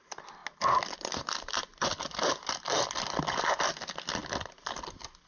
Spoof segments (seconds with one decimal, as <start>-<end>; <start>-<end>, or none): none

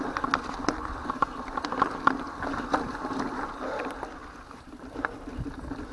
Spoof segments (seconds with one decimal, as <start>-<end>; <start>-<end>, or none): none

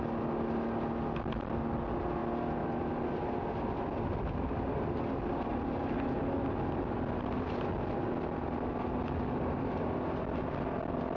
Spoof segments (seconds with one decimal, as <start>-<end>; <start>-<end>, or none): none

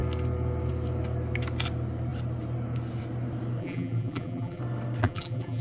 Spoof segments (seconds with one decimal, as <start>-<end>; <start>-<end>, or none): 3.6-4.6; 5.0-5.6

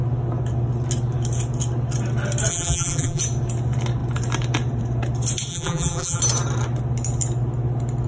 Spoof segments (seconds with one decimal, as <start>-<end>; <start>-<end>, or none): 2.5-3.2; 5.5-6.2

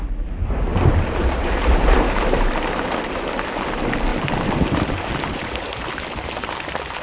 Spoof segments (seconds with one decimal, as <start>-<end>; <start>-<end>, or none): 0.7-2.4; 4.1-6.5

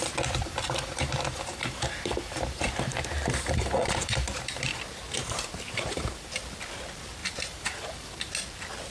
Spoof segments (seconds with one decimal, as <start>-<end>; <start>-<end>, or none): 0.4-4.8; 5.2-6.3; 7.2-8.3

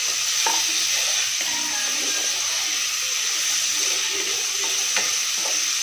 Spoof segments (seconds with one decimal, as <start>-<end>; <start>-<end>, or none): 0.0-3.5